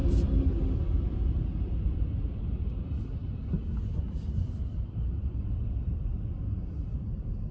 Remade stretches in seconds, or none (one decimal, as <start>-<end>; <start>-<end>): 1.6-3.2; 4.0-7.5